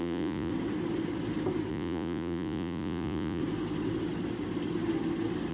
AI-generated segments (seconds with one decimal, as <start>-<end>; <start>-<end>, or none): 0.0-0.5; 1.7-3.4